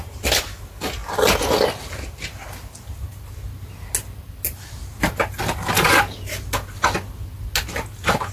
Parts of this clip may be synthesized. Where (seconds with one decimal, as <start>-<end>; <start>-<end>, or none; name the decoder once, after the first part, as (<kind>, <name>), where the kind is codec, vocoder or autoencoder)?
none